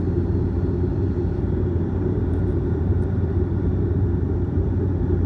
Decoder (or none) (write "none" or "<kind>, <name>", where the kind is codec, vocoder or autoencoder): vocoder, BigVGAN v2